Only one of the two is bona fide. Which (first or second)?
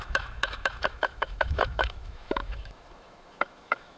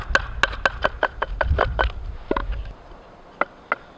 second